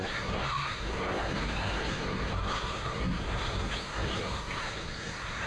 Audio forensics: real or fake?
fake